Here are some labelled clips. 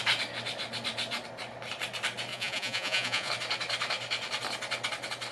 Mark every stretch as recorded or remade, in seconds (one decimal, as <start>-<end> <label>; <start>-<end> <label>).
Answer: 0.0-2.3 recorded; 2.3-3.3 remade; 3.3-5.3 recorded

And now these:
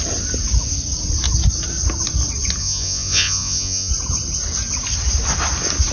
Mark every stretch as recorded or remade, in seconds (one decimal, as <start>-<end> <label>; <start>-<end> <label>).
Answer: 0.0-2.6 recorded; 2.6-3.9 remade; 3.9-5.9 recorded

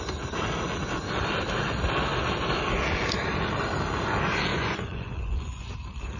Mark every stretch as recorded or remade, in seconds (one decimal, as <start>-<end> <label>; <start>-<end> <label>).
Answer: 0.0-4.5 recorded; 4.5-5.7 remade; 5.7-6.2 recorded

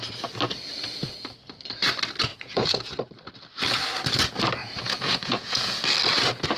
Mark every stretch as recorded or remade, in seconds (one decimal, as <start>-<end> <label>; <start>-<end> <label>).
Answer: 0.0-2.3 recorded; 2.3-3.0 remade; 3.0-4.6 recorded; 4.6-5.8 remade; 5.8-6.6 recorded

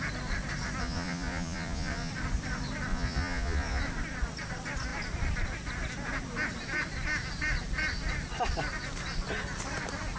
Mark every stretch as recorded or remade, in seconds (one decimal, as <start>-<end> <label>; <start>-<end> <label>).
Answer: 0.0-0.8 recorded; 0.8-2.1 remade; 2.1-2.9 recorded; 2.9-3.8 remade; 3.8-10.2 recorded

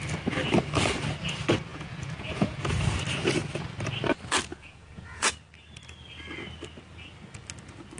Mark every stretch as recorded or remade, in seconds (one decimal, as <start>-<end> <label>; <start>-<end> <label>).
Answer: 0.0-1.7 recorded; 1.7-2.6 remade; 2.6-4.5 recorded; 4.5-5.3 remade; 5.3-8.0 recorded